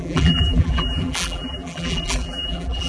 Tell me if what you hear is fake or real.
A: fake